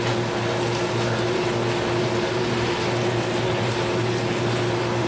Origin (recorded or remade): recorded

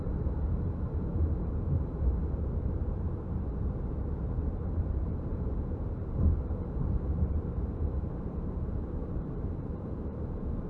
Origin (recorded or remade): remade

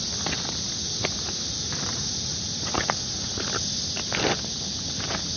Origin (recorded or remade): recorded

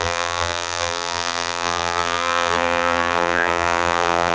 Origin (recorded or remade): remade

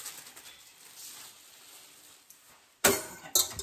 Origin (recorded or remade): recorded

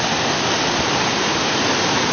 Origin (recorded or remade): remade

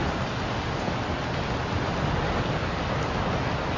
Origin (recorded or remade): recorded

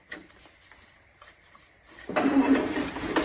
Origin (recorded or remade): remade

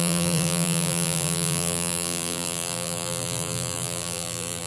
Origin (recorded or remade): remade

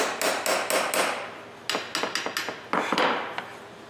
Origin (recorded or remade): recorded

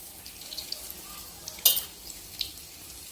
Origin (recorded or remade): recorded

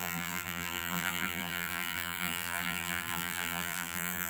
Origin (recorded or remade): remade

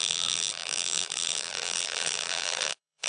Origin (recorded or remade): remade